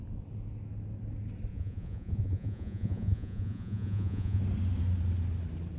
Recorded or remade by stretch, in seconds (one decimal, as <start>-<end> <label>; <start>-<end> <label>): 0.0-1.5 recorded; 1.5-4.4 remade; 4.4-5.8 recorded